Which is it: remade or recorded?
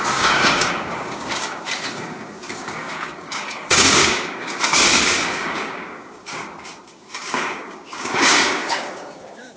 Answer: remade